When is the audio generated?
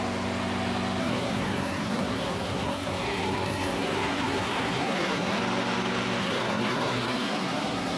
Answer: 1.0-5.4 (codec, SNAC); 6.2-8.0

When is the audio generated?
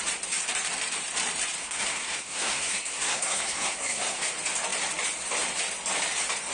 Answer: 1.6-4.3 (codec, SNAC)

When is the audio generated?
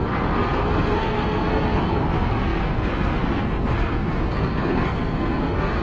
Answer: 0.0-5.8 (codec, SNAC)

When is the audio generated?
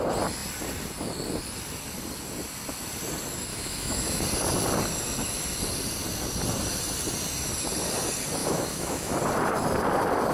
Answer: 3.5-4.2 (autoencoder, DAC-VAE); 8.4-9.1